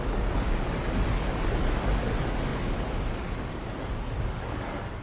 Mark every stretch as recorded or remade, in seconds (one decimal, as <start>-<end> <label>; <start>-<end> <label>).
0.0-5.0 remade